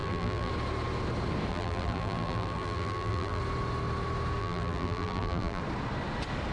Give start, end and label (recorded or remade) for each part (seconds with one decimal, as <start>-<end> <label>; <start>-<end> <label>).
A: 0.0-0.5 remade; 0.5-1.5 recorded; 1.5-3.4 remade; 3.4-4.4 recorded; 4.4-5.6 remade; 5.6-6.5 recorded